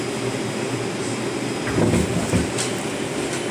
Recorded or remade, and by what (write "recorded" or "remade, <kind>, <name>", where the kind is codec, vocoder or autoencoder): recorded